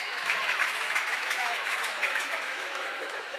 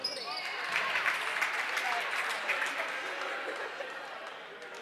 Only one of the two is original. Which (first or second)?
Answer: second